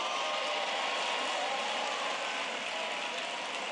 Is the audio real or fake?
real